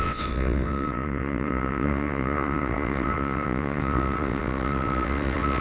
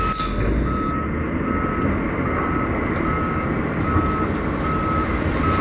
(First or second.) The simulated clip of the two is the first